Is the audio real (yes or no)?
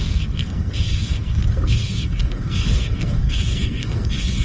no